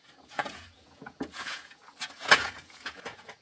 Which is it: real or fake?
fake